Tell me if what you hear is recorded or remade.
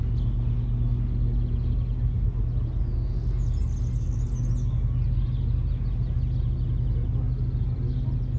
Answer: recorded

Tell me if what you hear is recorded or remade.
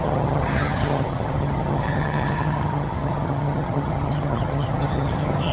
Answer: remade